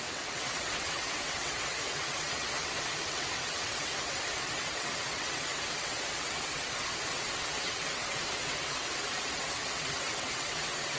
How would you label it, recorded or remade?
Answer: remade